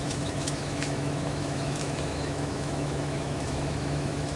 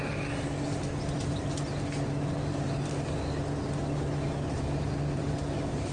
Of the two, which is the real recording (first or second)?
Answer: second